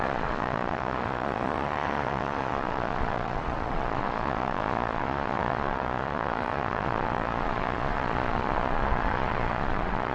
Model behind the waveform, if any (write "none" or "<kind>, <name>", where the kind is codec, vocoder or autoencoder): vocoder, Vocos